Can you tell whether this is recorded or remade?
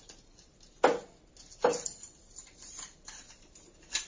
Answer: recorded